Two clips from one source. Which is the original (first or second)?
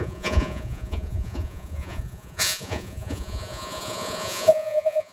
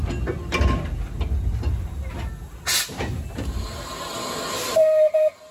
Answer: second